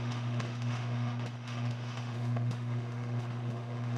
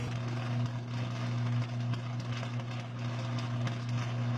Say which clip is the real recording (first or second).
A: second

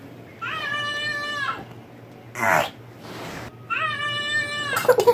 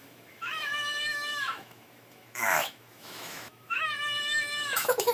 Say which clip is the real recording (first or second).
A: first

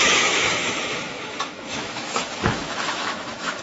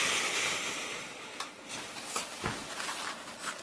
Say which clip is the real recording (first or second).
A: second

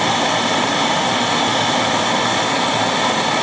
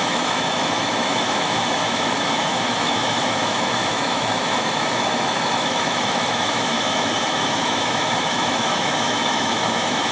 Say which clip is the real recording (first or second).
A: first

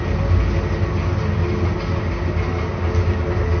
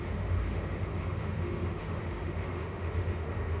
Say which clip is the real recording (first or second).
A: first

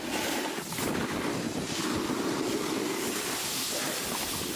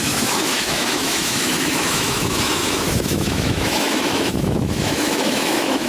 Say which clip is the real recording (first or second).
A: first